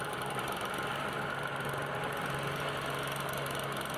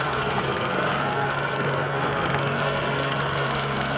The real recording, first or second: first